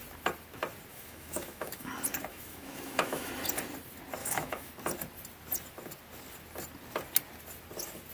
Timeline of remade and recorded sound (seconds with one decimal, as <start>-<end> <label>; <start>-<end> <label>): 0.0-0.9 recorded; 0.9-1.9 remade; 1.9-2.3 recorded; 2.3-3.3 remade; 3.3-4.2 recorded; 4.2-4.7 remade; 4.7-8.1 recorded